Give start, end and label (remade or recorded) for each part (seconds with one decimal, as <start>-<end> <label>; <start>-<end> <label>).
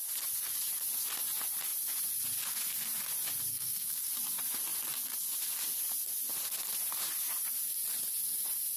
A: 0.0-3.5 recorded; 3.5-4.1 remade; 4.1-8.8 recorded